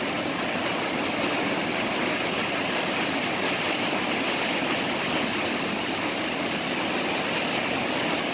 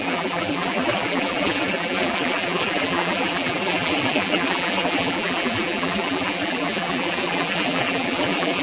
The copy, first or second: second